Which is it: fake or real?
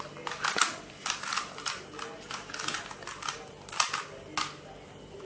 real